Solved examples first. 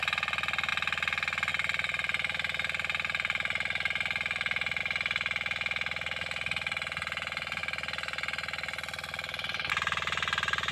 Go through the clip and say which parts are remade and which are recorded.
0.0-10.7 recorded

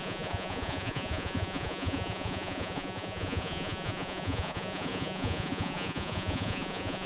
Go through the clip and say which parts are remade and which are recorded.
0.0-7.1 remade

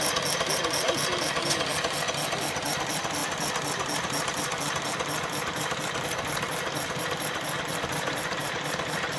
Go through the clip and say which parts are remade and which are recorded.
0.0-9.2 recorded

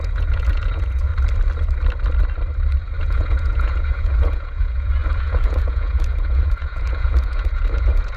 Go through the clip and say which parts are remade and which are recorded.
0.0-1.1 remade; 1.1-3.0 recorded; 3.0-8.2 remade

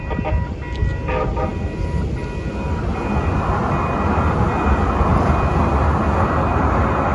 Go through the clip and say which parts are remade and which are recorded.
0.0-7.1 recorded